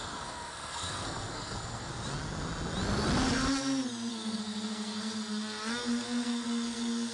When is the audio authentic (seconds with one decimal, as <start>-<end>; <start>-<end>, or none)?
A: 1.9-4.1